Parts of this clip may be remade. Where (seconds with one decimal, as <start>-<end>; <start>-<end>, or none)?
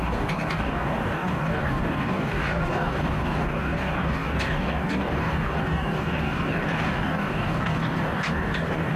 0.0-9.0